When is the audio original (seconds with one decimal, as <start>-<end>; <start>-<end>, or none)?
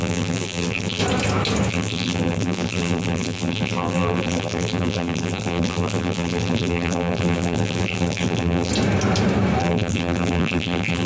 1.0-1.7; 8.7-9.6